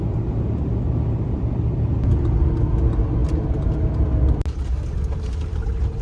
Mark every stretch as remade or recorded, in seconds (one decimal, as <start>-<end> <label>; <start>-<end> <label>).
0.0-6.0 recorded